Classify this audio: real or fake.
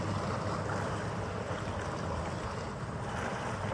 real